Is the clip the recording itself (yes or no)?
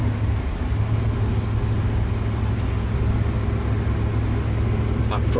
yes